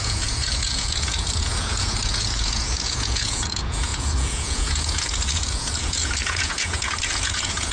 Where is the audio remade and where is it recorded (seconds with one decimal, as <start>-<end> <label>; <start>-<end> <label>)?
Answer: 0.0-7.7 remade

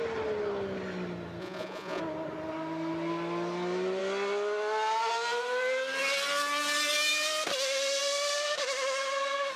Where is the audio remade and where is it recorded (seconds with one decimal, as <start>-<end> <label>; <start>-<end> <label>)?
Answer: 0.0-1.4 recorded; 1.4-2.0 remade; 2.0-9.6 recorded